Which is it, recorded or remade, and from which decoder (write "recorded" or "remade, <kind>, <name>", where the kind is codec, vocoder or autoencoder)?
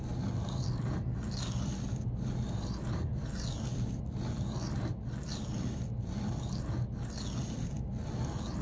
recorded